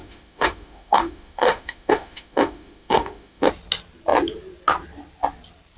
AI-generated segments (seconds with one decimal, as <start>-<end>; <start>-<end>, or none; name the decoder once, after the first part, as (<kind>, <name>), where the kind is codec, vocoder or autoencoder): 0.0-3.5 (autoencoder, DAC-VAE)